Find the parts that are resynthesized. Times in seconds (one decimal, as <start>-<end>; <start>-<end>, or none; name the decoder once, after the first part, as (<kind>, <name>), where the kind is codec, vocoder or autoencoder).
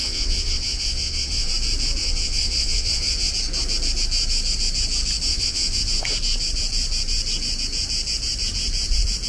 0.0-1.5 (vocoder, WaveNeXt); 2.0-3.3; 5.3-5.8